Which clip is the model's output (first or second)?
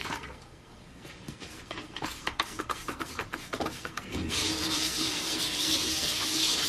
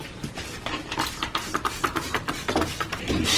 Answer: first